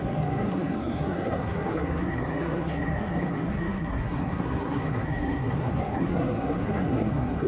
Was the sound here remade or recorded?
remade